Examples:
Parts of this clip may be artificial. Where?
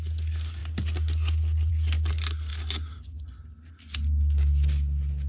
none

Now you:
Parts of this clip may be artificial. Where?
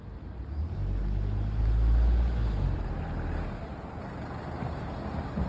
none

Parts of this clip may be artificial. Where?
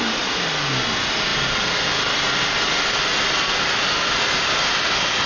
none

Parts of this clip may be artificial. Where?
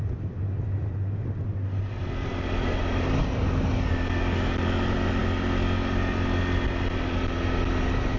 none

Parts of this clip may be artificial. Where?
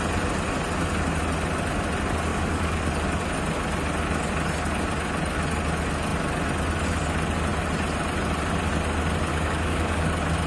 2.3-2.8; 9.3-10.1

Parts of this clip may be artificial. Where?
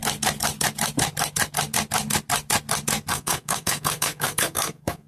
3.1-5.1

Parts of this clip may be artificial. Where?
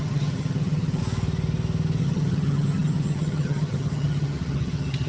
0.0-1.0; 2.0-5.1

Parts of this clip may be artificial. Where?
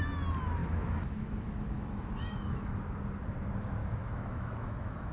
0.6-2.7; 3.8-5.1